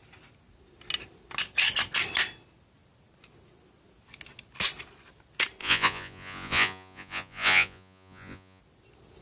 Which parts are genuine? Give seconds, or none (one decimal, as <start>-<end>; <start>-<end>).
0.0-5.6; 8.6-9.2